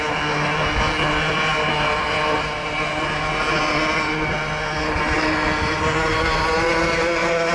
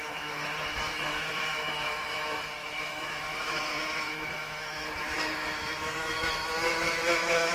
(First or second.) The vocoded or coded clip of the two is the second